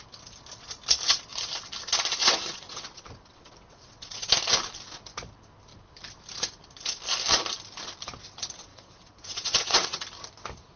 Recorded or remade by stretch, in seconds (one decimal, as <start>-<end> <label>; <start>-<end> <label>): 0.0-2.2 recorded; 2.2-4.3 remade; 4.3-8.7 recorded; 8.7-10.0 remade; 10.0-10.8 recorded